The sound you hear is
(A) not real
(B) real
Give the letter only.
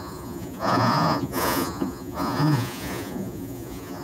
A